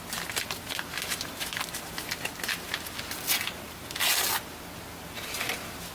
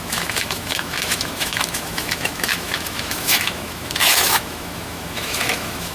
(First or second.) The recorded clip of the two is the first